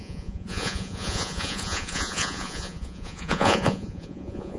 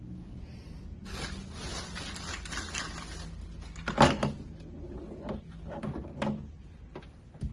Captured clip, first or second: second